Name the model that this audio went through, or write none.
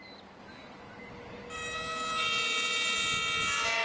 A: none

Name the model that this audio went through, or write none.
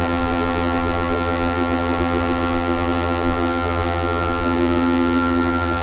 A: vocoder, BigVGAN v2